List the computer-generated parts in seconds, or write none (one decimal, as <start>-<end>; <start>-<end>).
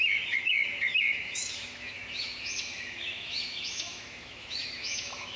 0.0-5.4